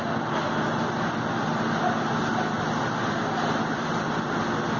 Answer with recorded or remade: recorded